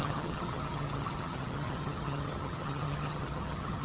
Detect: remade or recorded remade